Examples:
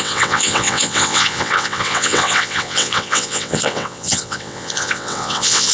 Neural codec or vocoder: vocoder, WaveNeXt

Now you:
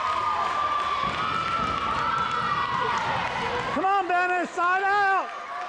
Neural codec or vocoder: none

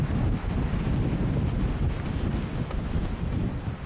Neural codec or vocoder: none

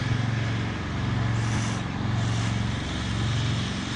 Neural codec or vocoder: none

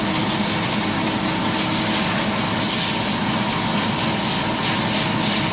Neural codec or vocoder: none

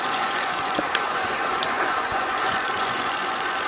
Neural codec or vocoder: vocoder, Vocos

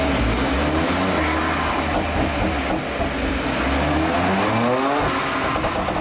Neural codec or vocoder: none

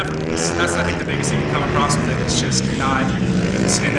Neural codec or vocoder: vocoder, BigVGAN v2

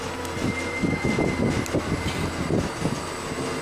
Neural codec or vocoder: none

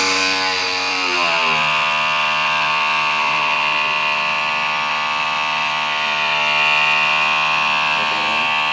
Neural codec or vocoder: vocoder, BigVGAN v2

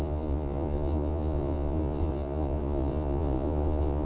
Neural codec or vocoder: vocoder, Vocos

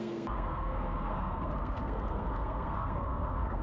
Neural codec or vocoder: codec, SNAC